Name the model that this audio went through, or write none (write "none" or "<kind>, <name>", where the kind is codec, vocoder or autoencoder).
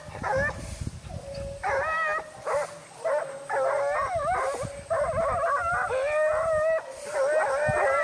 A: none